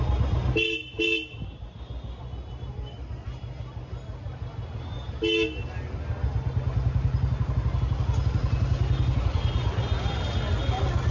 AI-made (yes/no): no